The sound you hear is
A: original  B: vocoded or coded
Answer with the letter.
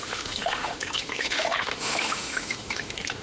B